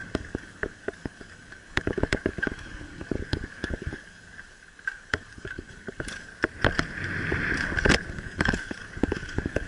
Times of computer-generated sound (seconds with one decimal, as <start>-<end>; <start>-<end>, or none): 0.0-6.3; 8.1-9.7